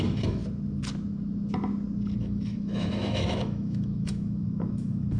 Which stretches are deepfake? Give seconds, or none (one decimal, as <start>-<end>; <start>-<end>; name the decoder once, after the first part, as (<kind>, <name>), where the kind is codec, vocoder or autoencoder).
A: 0.0-0.4 (autoencoder, DAC-VAE); 2.2-5.2